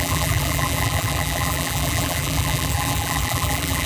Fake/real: fake